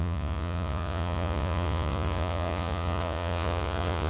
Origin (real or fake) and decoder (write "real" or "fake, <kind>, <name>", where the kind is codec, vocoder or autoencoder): fake, vocoder, Vocos